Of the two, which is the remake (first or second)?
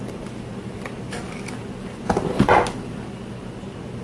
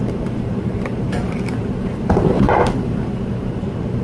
second